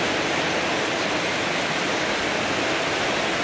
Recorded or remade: recorded